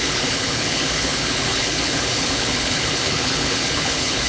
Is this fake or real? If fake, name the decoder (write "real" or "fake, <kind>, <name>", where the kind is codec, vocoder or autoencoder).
fake, codec, HILCodec